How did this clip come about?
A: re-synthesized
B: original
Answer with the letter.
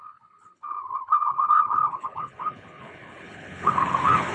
A